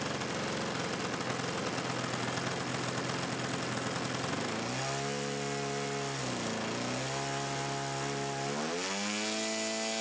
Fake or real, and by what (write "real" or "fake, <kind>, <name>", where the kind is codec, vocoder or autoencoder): real